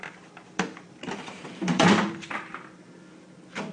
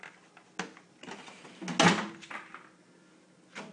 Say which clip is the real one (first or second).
second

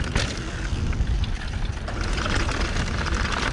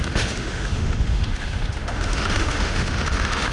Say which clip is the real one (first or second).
first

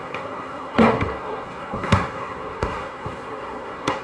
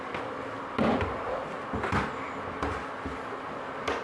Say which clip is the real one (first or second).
second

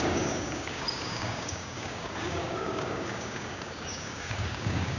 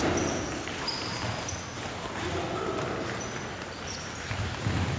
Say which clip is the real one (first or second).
second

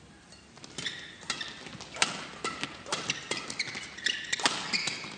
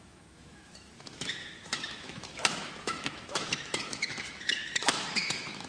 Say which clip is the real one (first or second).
first